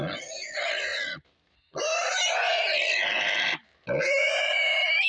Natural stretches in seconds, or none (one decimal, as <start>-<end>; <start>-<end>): 0.0-5.1